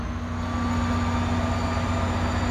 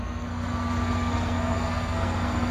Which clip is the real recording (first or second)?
first